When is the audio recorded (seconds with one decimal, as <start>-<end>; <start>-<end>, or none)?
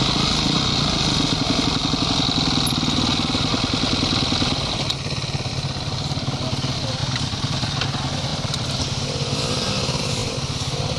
0.0-7.0; 7.8-8.3; 9.7-11.0